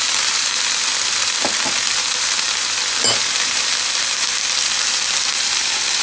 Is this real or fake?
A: fake